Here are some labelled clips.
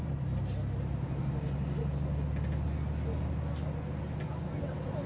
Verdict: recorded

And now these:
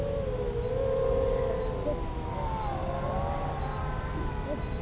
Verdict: recorded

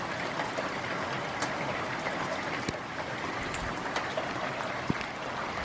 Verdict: recorded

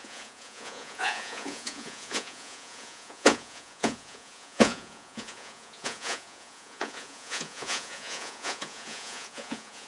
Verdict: remade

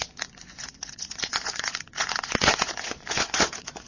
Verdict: remade